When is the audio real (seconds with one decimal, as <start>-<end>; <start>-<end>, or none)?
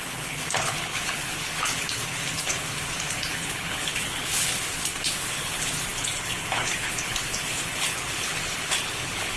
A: none